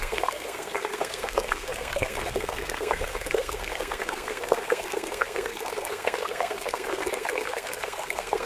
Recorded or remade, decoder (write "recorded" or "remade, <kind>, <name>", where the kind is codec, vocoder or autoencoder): remade, codec, SNAC